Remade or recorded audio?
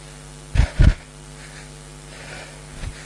recorded